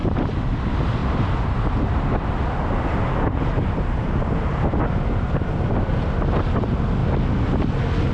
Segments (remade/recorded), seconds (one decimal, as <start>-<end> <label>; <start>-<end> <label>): 0.0-0.6 remade; 0.6-1.0 recorded; 1.0-5.9 remade; 5.9-8.1 recorded